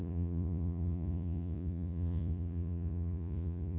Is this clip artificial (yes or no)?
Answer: yes